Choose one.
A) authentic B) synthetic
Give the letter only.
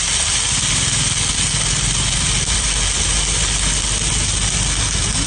A